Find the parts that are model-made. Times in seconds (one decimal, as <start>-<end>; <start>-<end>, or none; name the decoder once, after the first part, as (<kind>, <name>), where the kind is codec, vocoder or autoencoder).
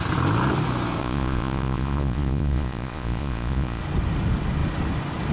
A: 1.0-3.8 (vocoder, Vocos)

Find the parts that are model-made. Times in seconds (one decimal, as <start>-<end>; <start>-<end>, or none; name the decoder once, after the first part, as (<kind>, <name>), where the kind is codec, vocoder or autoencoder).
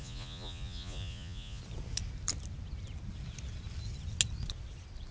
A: 0.0-1.6 (vocoder, Vocos)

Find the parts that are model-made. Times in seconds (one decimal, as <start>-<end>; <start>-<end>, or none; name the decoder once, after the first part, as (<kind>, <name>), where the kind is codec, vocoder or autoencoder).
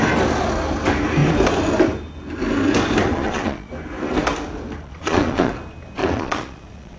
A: 3.1-3.7 (vocoder, Vocos); 4.8-5.5; 6.0-7.0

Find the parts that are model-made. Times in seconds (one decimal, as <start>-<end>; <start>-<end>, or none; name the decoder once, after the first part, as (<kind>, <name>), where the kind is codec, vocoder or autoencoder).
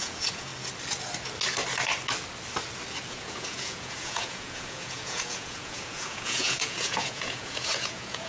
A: 0.0-0.5 (vocoder, Vocos); 3.1-8.3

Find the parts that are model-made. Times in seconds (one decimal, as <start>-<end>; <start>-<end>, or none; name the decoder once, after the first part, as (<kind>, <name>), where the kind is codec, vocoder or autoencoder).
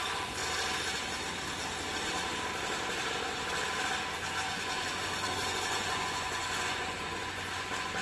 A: 0.0-0.4 (vocoder, Vocos); 4.5-8.0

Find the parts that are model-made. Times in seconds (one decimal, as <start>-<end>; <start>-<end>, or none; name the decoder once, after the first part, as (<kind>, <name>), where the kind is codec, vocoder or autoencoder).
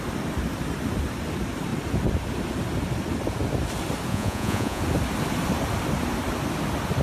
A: 4.1-4.8 (vocoder, Vocos)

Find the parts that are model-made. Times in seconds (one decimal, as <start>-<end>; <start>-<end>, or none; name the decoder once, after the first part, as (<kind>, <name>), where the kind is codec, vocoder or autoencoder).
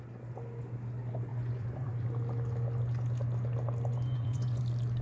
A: 1.3-1.9 (vocoder, Vocos); 3.9-4.6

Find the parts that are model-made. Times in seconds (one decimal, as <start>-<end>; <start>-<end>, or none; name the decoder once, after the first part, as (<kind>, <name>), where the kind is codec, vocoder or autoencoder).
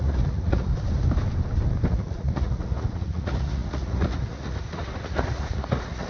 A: 0.0-0.7 (vocoder, Vocos); 1.9-6.1